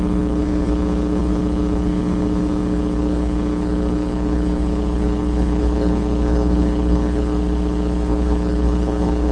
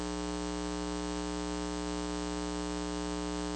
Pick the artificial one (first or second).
first